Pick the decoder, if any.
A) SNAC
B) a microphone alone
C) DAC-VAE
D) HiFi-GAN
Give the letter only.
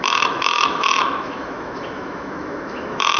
C